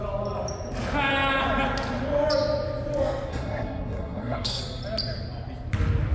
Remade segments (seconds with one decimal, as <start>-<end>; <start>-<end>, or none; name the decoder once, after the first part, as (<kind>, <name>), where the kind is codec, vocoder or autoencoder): 3.3-4.6 (codec, SNAC)